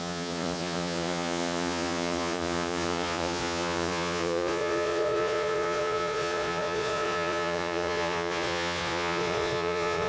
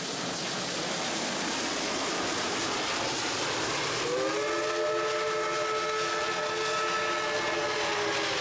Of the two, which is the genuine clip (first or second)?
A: second